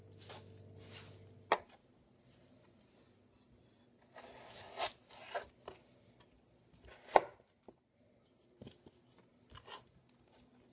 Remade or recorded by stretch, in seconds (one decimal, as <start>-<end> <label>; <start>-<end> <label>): 0.0-10.7 recorded